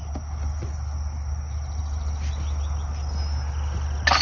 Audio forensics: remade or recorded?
recorded